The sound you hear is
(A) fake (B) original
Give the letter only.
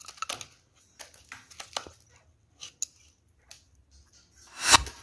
B